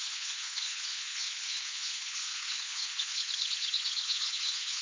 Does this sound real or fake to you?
fake